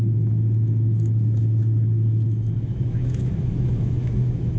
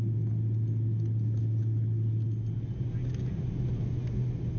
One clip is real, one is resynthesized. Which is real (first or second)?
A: second